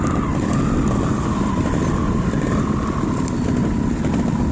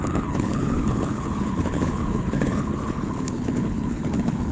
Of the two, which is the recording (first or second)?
first